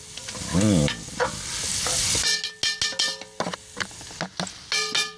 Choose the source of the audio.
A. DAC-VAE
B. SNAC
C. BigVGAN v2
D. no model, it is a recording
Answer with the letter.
D